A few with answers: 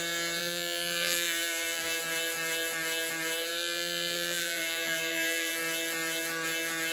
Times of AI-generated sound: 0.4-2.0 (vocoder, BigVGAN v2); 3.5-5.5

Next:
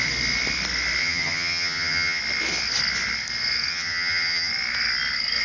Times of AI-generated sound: 1.0-2.2 (vocoder, HiFi-GAN); 3.7-4.5